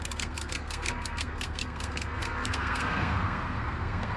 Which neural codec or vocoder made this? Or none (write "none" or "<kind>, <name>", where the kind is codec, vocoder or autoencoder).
codec, SNAC